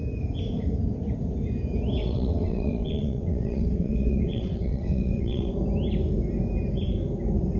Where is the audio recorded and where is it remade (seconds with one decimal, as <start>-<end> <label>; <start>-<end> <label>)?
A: 0.0-2.0 recorded; 2.0-5.5 remade; 5.5-7.6 recorded